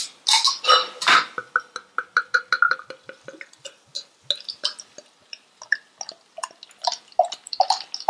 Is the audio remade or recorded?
recorded